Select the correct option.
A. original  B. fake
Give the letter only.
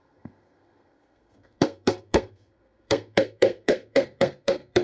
B